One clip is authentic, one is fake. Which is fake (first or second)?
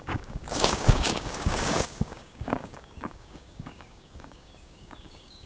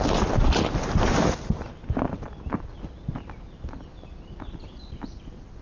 first